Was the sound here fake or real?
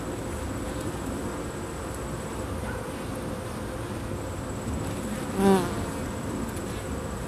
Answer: real